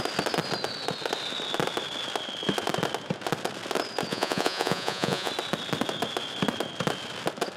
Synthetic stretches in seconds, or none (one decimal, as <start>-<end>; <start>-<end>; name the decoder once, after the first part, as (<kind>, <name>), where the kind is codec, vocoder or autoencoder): 4.1-5.3 (vocoder, Vocos)